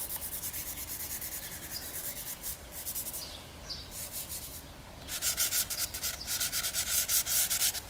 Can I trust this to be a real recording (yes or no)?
yes